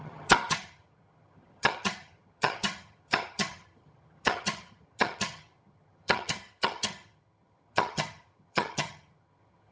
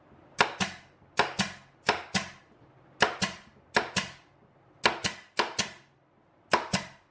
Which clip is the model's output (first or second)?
first